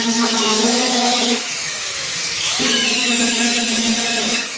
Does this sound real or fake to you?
fake